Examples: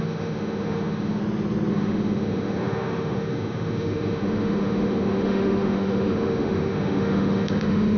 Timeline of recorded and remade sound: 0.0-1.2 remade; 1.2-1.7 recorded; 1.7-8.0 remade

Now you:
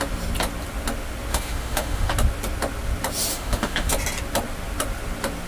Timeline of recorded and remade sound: 0.0-1.3 recorded; 1.3-2.1 remade; 2.1-3.3 recorded; 3.3-3.9 remade; 3.9-5.5 recorded